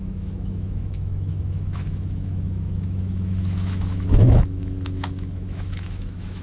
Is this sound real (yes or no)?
no